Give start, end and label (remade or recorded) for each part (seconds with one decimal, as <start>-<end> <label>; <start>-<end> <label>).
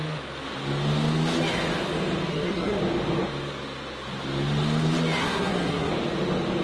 0.0-2.3 recorded; 2.3-2.8 remade; 2.8-5.2 recorded; 5.2-5.9 remade; 5.9-6.6 recorded